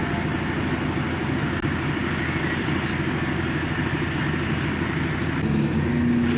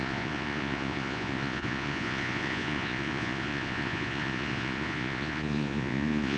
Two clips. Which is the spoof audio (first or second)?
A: second